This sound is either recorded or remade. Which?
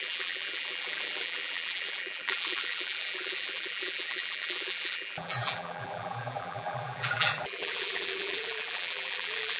remade